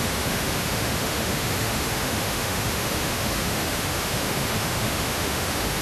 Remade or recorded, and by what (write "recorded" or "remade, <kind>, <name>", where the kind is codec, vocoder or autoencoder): remade, autoencoder, DAC-VAE